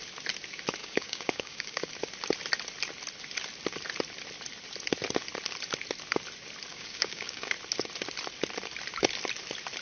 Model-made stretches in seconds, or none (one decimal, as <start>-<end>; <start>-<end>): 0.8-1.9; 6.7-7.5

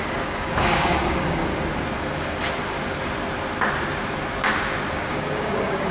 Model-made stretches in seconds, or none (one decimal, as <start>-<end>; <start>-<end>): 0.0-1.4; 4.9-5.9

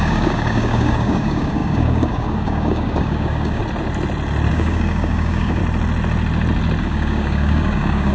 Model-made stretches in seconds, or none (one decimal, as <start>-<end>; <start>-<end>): 0.0-3.6; 4.5-5.6; 6.8-8.1

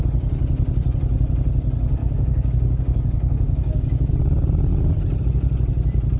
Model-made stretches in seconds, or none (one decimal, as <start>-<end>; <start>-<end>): 2.0-4.1

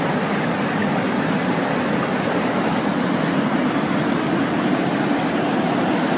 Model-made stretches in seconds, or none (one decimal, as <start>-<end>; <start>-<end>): none

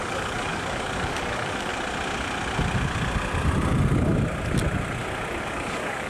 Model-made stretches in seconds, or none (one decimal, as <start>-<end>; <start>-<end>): 0.0-1.7; 5.4-6.1

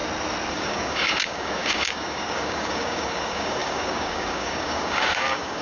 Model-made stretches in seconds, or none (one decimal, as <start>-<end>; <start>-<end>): 0.5-5.6